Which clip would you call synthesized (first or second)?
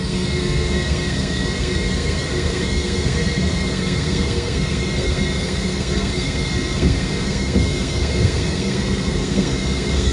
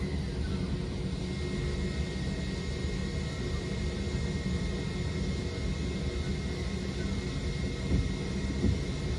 first